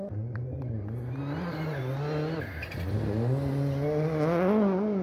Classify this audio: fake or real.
real